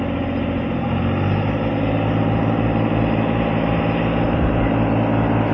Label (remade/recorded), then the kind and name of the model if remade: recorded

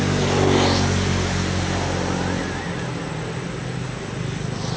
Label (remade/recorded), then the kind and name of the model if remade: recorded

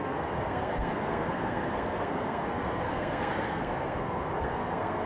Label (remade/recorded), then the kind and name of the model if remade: remade, codec, SNAC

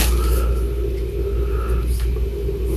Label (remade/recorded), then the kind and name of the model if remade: recorded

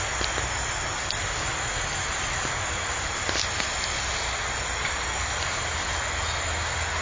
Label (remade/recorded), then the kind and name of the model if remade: recorded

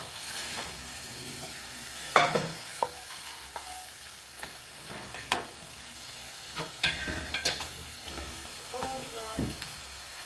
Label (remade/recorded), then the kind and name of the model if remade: remade, codec, SNAC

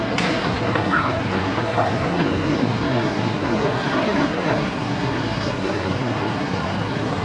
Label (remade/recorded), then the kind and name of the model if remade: remade, codec, SNAC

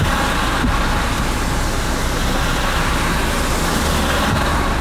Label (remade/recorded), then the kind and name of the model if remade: recorded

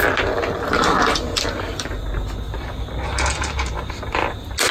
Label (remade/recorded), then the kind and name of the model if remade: recorded